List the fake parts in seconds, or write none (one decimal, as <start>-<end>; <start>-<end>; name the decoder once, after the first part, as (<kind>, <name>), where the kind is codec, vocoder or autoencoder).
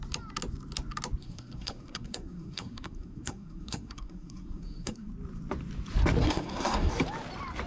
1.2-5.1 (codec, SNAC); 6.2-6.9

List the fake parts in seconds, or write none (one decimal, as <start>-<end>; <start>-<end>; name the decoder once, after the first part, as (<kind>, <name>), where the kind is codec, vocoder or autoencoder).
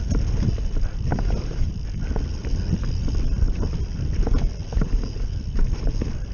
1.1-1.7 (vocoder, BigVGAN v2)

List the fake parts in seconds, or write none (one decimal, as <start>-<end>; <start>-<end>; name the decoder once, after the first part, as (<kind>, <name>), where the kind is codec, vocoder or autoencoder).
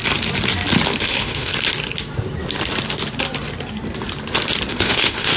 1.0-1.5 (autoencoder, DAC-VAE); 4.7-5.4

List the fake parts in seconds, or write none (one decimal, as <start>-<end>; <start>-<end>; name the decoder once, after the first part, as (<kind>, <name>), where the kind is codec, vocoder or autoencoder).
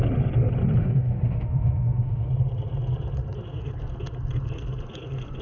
0.8-2.3 (autoencoder, DAC-VAE)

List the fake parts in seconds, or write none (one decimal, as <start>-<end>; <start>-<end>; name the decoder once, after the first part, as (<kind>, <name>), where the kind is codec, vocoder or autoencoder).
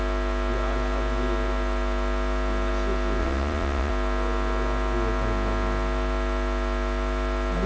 3.2-3.9 (vocoder, Vocos)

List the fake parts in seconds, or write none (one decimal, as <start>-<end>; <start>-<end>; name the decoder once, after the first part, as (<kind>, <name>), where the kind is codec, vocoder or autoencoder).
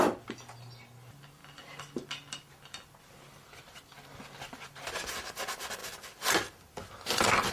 none